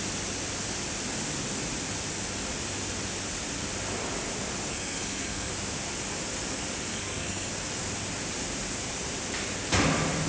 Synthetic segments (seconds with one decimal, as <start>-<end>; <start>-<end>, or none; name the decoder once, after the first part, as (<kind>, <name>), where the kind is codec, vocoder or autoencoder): 4.7-5.5 (codec, SNAC); 6.9-7.5

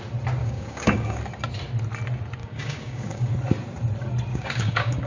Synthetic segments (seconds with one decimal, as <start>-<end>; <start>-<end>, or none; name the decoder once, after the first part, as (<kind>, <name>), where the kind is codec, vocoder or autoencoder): 0.4-1.2 (codec, DAC); 2.4-3.3; 4.3-5.1

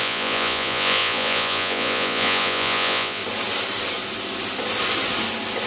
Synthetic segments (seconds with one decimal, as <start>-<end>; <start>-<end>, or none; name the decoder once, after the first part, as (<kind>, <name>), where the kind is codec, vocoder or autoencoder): 0.0-3.2 (vocoder, Vocos)